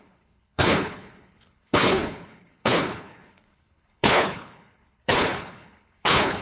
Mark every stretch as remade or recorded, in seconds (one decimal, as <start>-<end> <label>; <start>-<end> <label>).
0.0-6.4 remade

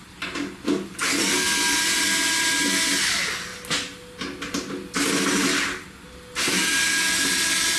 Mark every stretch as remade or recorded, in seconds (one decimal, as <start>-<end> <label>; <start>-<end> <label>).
0.0-7.8 recorded

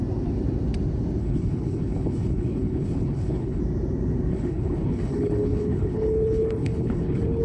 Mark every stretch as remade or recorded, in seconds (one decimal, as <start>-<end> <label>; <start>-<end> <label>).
0.0-1.2 recorded; 1.2-3.6 remade; 3.6-4.3 recorded; 4.3-7.4 remade

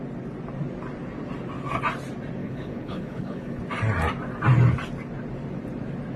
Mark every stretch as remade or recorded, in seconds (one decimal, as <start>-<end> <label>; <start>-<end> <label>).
0.0-2.4 recorded; 2.4-3.6 remade; 3.6-6.2 recorded

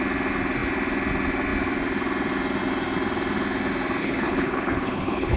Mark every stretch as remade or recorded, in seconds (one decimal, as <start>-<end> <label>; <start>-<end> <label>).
0.0-4.0 recorded; 4.0-5.4 remade

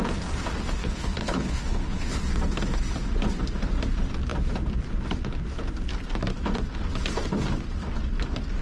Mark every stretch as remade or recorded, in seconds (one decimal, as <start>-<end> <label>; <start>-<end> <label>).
0.0-0.8 recorded; 0.8-2.2 remade; 2.2-8.6 recorded

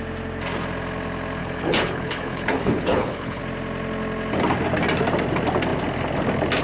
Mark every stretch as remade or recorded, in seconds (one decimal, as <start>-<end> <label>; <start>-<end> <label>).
0.0-1.4 recorded; 1.4-3.4 remade; 3.4-6.6 recorded

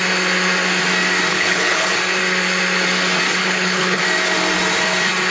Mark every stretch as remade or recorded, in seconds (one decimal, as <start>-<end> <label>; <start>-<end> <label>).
0.0-1.3 recorded; 1.3-1.9 remade; 1.9-3.4 recorded; 3.4-4.0 remade; 4.0-5.3 recorded